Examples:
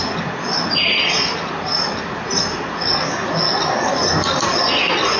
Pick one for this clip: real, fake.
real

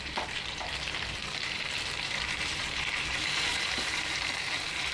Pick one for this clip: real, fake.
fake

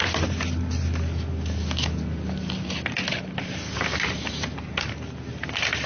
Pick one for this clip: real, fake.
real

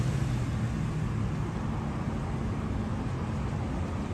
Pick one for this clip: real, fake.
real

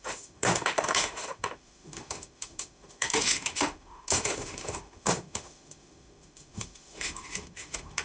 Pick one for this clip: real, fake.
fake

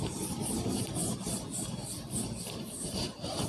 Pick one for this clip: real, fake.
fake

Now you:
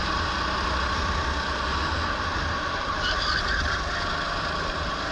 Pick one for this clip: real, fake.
real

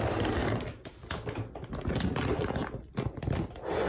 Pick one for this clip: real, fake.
real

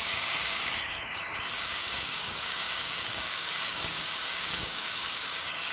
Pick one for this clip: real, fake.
fake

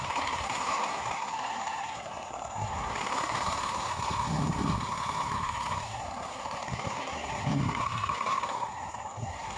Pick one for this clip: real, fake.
fake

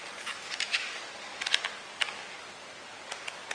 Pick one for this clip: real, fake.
real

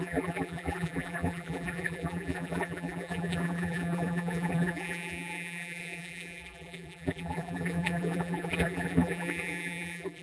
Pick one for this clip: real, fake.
fake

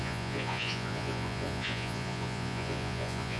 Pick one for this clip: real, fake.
fake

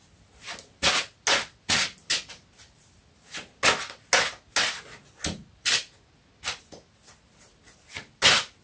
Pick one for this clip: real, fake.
real